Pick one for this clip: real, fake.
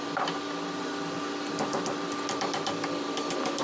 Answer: real